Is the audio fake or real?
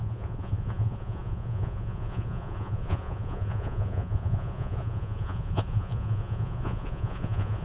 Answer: fake